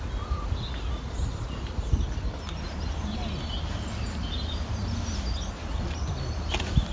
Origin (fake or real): real